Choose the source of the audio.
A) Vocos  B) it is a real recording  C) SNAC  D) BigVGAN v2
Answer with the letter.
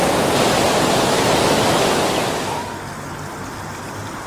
B